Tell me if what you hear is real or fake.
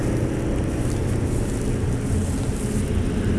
real